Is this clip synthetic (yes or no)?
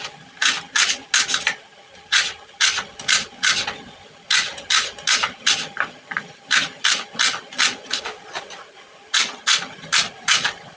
no